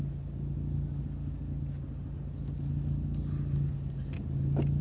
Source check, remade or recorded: recorded